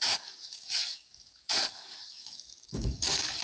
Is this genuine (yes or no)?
no